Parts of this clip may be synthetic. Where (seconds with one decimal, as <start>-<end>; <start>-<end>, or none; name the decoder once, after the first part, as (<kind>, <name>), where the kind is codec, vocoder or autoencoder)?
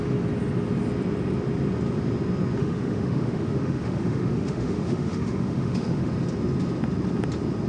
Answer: 2.6-6.1 (autoencoder, DAC-VAE)